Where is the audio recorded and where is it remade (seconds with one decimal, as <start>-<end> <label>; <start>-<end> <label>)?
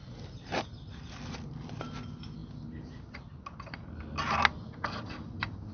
0.0-5.7 recorded